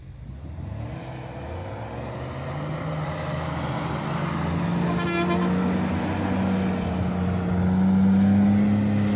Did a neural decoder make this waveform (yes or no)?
no